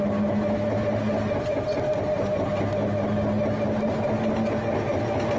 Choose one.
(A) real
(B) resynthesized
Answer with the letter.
A